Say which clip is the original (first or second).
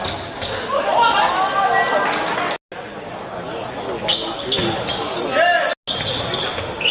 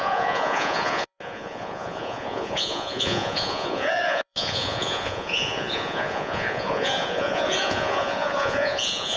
first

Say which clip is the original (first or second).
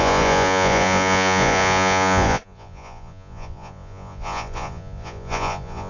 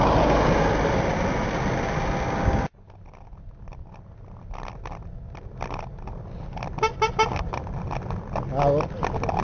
second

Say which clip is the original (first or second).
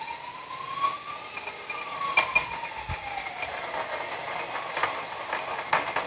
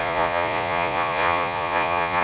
first